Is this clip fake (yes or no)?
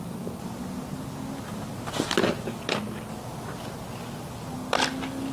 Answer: no